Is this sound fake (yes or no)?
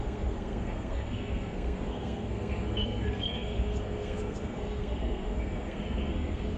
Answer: yes